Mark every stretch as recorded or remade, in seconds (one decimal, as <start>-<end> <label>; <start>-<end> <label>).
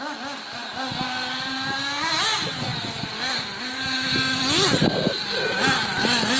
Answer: 0.0-6.4 recorded